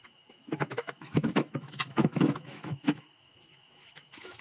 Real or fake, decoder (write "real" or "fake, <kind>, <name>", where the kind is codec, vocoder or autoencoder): fake, autoencoder, DAC-VAE